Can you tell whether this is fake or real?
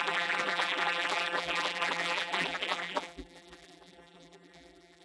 fake